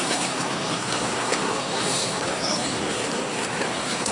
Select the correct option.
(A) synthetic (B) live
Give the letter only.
A